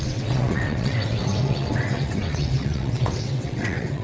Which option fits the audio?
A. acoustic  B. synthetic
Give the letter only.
B